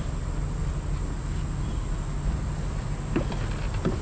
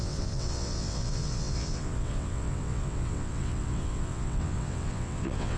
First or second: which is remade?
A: second